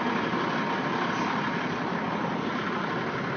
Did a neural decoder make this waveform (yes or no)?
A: no